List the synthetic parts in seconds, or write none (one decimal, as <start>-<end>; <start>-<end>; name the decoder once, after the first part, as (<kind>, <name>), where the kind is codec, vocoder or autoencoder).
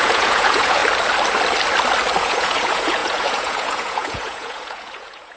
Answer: 0.0-0.8 (vocoder, Vocos); 2.2-5.4